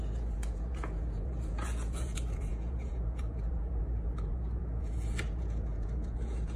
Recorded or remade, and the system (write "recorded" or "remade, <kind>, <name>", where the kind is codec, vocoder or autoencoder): remade, vocoder, Vocos